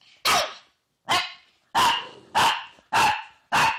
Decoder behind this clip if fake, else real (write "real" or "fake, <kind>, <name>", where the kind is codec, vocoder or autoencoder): real